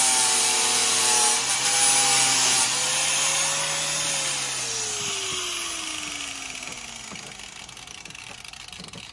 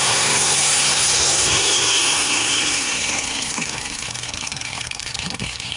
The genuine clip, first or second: first